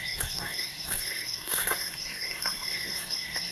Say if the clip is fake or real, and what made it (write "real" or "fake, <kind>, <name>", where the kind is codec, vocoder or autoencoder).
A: fake, codec, SNAC